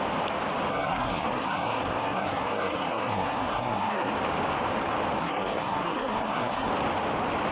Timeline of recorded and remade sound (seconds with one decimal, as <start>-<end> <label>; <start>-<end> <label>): 0.0-0.7 recorded; 0.7-4.1 remade; 4.1-5.2 recorded; 5.2-6.7 remade; 6.7-7.5 recorded